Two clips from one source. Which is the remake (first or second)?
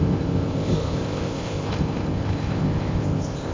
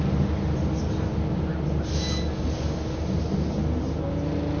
first